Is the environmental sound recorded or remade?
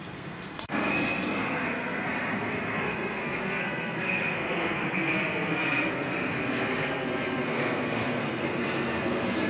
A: remade